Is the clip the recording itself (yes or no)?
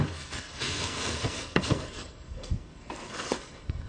no